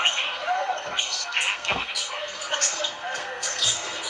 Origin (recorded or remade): remade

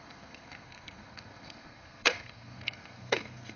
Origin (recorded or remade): remade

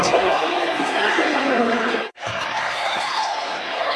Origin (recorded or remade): remade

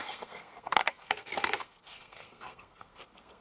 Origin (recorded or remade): remade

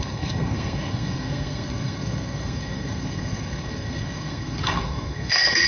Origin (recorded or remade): remade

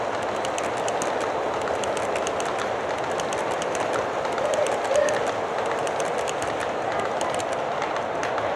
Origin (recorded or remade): recorded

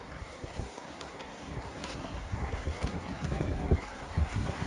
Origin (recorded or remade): remade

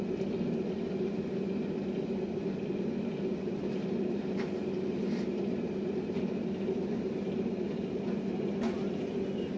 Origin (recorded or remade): recorded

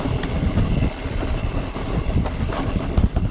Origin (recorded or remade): recorded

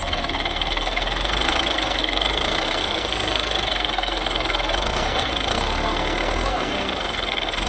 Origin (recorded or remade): remade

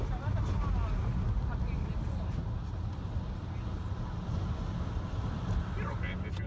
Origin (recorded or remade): recorded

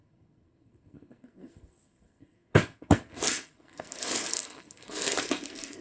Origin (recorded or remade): remade